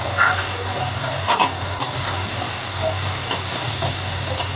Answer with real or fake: fake